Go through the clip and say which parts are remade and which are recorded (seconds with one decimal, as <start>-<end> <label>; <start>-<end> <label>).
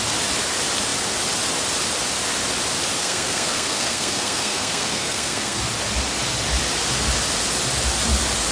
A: 0.0-3.0 recorded; 3.0-5.6 remade; 5.6-8.5 recorded